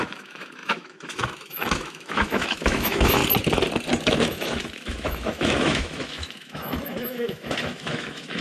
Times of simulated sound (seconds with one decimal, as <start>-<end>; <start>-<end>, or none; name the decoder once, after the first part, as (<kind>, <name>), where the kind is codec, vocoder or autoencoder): 0.0-3.2 (autoencoder, DAC-VAE); 4.0-8.4